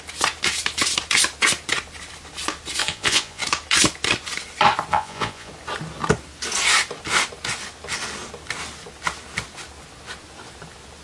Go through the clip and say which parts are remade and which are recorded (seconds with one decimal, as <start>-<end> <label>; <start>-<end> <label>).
0.0-2.8 recorded; 2.8-3.4 remade; 3.4-4.9 recorded; 4.9-5.5 remade; 5.5-11.0 recorded